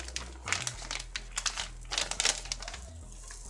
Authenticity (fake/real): real